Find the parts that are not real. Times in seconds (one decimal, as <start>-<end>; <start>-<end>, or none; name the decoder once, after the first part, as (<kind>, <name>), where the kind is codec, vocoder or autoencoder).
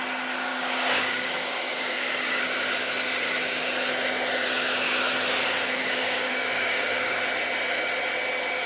0.5-2.4 (codec, DAC); 5.8-7.2